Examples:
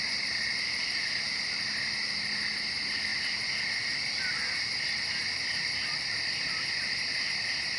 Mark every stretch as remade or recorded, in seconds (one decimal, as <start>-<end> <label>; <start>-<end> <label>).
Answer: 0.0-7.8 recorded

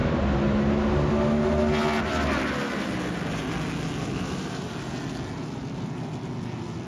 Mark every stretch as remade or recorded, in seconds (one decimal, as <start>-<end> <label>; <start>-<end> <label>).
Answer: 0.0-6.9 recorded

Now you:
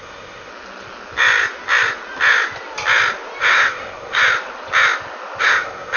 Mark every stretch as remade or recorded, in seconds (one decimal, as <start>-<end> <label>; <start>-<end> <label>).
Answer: 0.0-0.5 remade; 0.5-3.4 recorded; 3.4-4.2 remade; 4.2-5.4 recorded; 5.4-6.0 remade

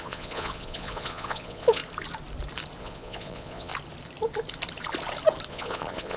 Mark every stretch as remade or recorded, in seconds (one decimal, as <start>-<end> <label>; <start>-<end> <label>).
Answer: 0.0-1.8 remade; 1.8-2.8 recorded; 2.8-3.7 remade; 3.7-5.5 recorded; 5.5-6.2 remade